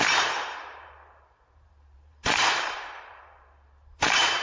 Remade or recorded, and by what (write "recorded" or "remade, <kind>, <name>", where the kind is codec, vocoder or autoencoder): remade, vocoder, BigVGAN v2